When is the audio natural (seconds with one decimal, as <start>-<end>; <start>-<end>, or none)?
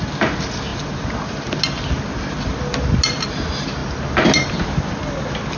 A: 0.0-5.6